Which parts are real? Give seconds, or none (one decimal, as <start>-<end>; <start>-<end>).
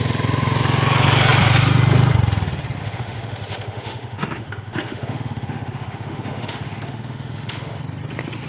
0.0-2.8; 7.8-8.5